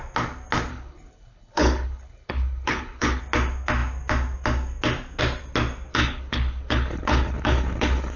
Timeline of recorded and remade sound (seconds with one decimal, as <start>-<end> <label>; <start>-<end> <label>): 0.0-0.7 recorded; 0.7-3.2 remade; 3.2-5.9 recorded; 5.9-8.2 remade

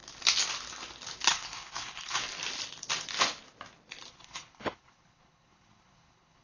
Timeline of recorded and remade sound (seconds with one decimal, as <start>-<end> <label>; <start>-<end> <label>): 0.0-1.3 recorded; 1.3-2.2 remade; 2.2-4.1 recorded; 4.1-6.4 remade

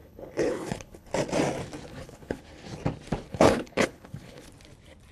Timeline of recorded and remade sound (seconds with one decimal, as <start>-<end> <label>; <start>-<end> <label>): 0.0-1.1 remade; 1.1-1.9 recorded; 1.9-2.4 remade; 2.4-3.3 recorded; 3.3-4.5 remade; 4.5-5.1 recorded

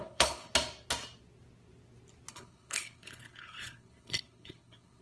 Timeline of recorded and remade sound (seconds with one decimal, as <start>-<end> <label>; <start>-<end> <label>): 0.0-0.5 remade; 0.5-2.3 recorded; 2.3-5.0 remade

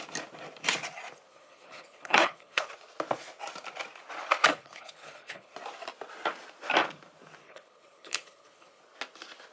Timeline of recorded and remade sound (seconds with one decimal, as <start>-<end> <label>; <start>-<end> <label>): 0.0-1.3 recorded; 1.3-2.7 remade; 2.7-4.5 recorded; 4.5-5.5 remade; 5.5-7.4 recorded; 7.4-8.8 remade; 8.8-9.5 recorded

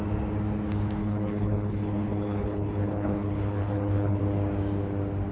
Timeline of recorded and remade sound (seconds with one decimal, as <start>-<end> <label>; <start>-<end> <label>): 0.0-1.0 recorded; 1.0-4.2 remade; 4.2-5.3 recorded

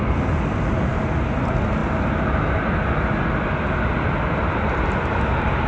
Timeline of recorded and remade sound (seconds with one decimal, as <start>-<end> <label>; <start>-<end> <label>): 0.0-5.7 recorded